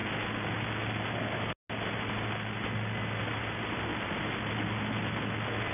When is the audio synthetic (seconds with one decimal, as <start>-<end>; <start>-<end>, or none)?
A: none